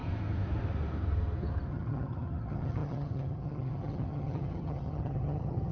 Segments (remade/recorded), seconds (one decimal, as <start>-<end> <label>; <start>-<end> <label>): 0.0-1.7 recorded; 1.7-5.7 remade